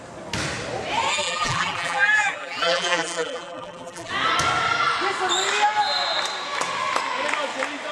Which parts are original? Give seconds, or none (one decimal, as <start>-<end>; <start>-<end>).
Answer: 0.0-1.1; 4.1-7.9